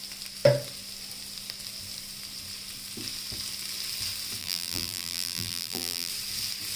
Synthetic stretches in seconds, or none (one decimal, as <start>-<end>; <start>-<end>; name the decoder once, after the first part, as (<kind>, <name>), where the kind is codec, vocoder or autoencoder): 4.4-6.1 (vocoder, BigVGAN v2)